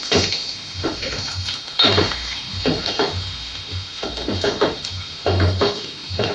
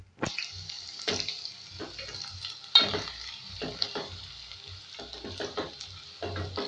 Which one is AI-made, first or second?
first